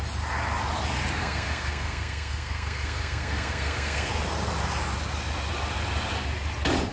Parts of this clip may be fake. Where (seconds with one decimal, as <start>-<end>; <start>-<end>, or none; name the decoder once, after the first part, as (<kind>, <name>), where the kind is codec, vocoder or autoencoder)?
1.2-4.1 (codec, SNAC)